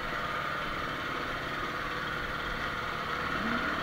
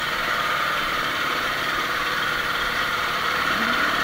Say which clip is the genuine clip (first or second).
first